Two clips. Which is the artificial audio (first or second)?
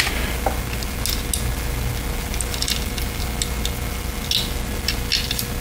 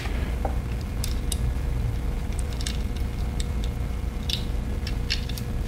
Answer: second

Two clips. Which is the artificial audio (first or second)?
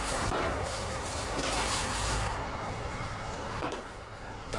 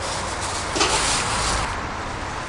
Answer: first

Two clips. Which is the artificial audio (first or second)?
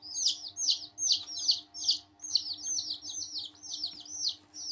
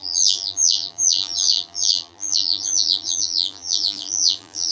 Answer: second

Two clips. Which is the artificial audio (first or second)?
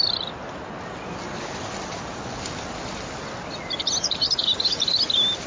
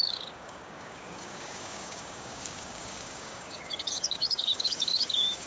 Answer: second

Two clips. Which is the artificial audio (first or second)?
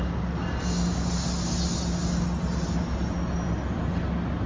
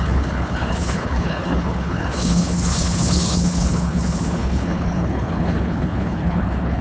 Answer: second